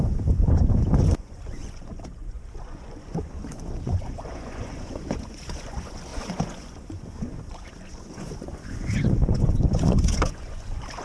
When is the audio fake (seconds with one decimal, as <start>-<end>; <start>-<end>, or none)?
0.0-11.0